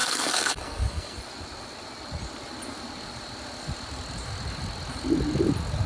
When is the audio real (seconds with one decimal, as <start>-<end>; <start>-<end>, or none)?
1.2-5.9